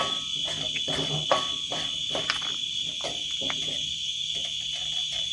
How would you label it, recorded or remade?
recorded